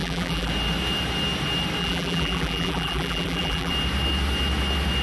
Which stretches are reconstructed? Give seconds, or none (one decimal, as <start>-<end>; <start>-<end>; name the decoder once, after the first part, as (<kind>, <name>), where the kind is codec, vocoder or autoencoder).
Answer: 0.0-0.5 (vocoder, BigVGAN v2); 1.8-3.7